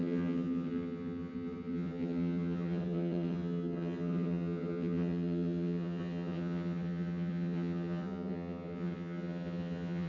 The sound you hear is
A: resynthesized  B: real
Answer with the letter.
A